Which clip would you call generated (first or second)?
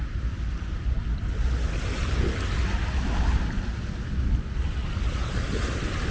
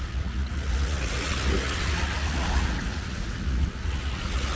second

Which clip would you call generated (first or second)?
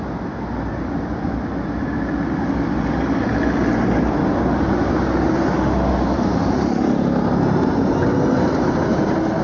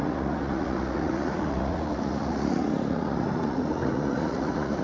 second